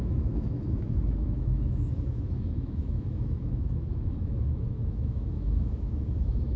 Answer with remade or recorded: remade